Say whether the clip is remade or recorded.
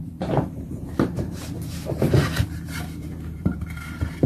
remade